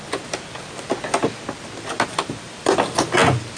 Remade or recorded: recorded